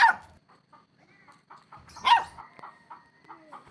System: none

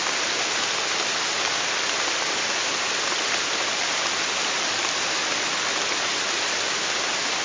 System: none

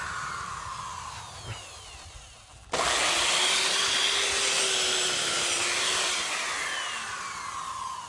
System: none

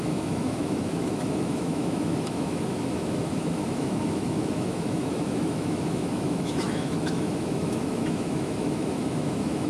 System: autoencoder, DAC-VAE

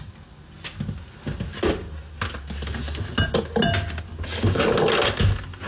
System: none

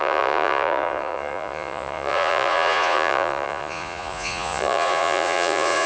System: vocoder, Vocos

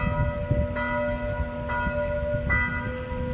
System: none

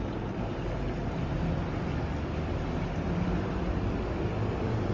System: none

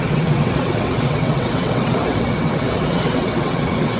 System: vocoder, WaveNeXt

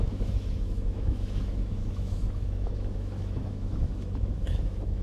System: autoencoder, DAC-VAE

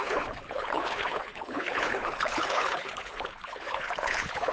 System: codec, HILCodec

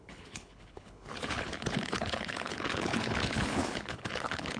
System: codec, HILCodec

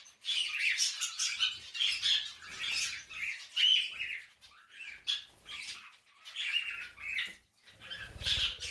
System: none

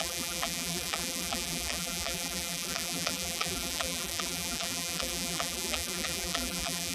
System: vocoder, BigVGAN v2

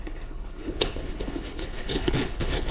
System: codec, HILCodec